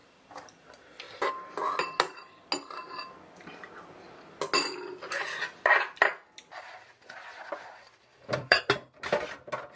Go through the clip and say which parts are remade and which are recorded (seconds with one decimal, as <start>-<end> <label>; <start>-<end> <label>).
0.0-8.1 recorded; 8.1-8.7 remade; 8.7-9.8 recorded